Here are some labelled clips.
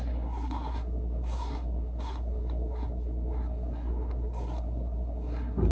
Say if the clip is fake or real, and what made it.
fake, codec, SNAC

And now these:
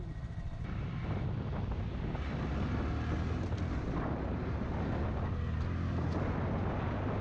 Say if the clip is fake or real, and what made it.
real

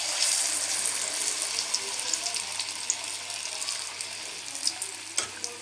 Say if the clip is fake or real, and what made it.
real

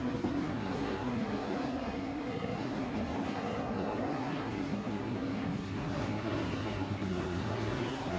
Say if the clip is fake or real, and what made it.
fake, codec, SNAC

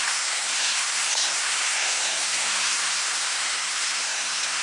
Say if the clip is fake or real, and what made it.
fake, codec, SNAC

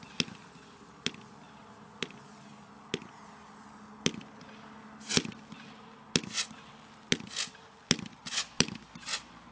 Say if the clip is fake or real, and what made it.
real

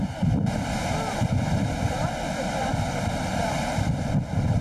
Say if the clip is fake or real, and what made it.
real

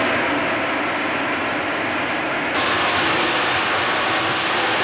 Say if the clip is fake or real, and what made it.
real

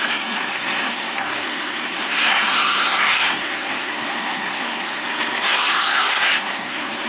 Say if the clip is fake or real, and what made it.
fake, codec, SNAC